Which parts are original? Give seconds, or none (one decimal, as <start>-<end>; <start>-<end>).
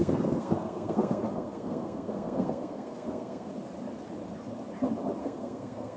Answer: 3.5-5.2